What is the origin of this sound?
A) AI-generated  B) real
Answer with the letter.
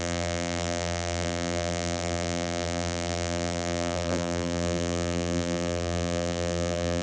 A